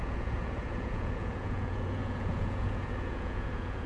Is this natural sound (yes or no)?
no